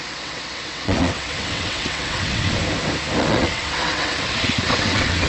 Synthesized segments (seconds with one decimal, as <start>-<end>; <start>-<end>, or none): 0.0-2.6; 3.2-5.3